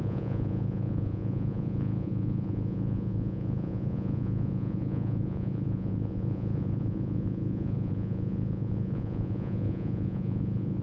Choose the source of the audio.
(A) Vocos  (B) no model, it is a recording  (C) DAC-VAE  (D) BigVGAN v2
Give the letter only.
A